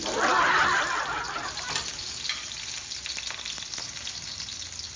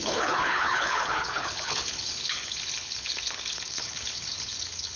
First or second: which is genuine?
first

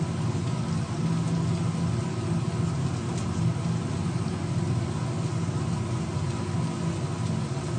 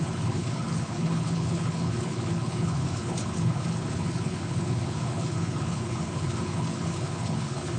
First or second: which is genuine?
first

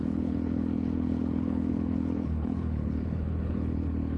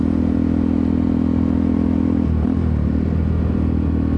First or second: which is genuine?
second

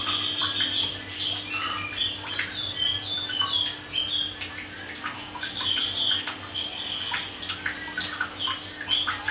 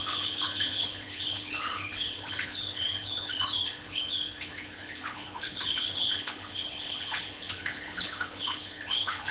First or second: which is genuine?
first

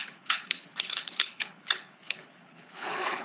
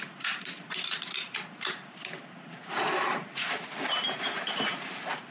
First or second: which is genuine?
second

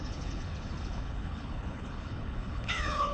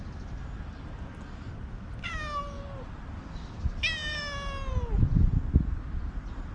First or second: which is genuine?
second